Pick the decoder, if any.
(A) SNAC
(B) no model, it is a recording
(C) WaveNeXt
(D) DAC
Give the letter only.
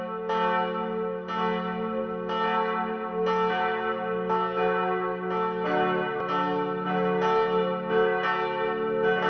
B